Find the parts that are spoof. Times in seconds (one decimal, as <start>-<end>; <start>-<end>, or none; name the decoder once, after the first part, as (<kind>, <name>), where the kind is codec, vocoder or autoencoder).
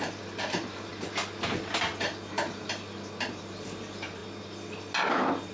0.0-0.9 (vocoder, BigVGAN v2); 3.4-4.2